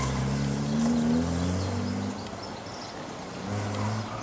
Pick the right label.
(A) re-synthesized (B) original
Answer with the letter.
B